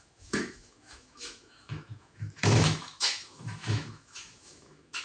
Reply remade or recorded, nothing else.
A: remade